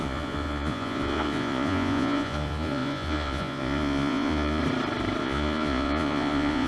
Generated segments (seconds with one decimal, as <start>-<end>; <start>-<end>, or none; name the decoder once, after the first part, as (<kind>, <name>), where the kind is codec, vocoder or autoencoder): 0.0-4.6 (vocoder, Vocos); 5.2-6.7